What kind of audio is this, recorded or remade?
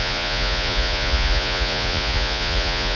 remade